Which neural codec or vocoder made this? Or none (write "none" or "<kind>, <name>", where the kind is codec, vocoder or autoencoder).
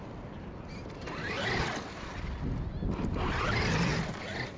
none